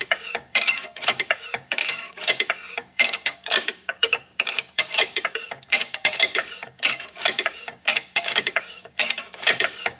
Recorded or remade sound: remade